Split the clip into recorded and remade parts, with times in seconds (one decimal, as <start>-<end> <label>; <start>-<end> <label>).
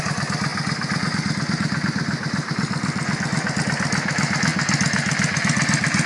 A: 0.0-6.1 recorded